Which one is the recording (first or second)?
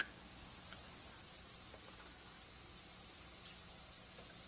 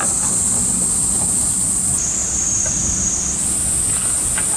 first